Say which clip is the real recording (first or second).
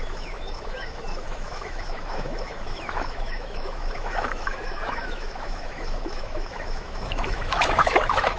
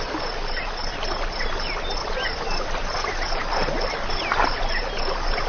second